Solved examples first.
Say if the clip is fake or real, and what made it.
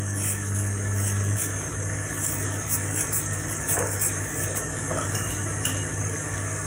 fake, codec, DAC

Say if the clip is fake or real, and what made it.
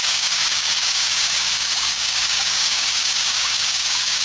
fake, codec, DAC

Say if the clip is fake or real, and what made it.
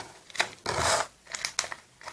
real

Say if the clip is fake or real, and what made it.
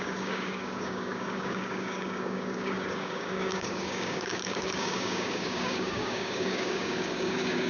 fake, codec, DAC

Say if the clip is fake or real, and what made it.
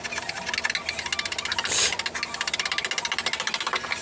real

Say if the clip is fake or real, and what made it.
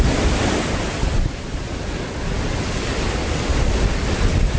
real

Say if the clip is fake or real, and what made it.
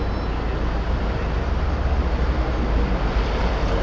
real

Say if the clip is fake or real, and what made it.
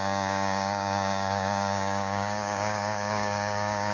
fake, codec, DAC